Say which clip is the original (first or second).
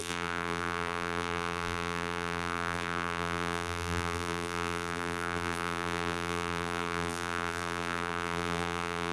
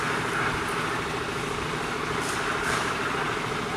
second